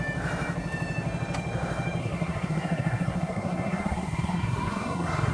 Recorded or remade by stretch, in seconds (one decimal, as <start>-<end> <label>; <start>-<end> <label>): 0.0-2.0 recorded; 2.0-5.3 remade